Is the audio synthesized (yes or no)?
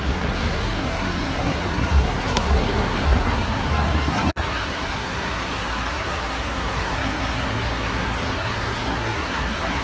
yes